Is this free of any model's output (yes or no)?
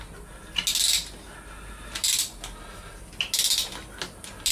yes